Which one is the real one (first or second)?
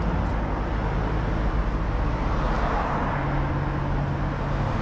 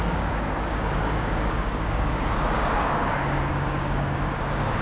first